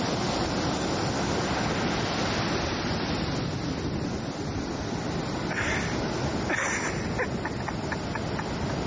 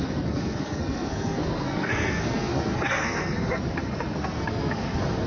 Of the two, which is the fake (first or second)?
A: second